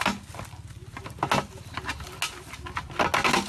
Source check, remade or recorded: recorded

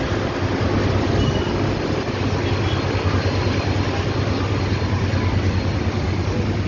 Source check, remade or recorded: recorded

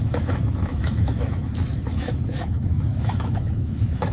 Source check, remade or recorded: remade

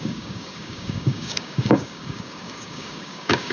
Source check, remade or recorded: remade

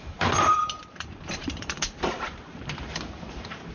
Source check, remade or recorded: remade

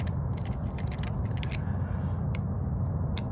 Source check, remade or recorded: recorded